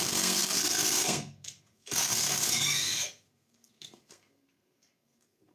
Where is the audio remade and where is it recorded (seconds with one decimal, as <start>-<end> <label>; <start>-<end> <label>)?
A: 0.0-5.5 remade